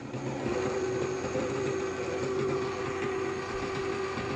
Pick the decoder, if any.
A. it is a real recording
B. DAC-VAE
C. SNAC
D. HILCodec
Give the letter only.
A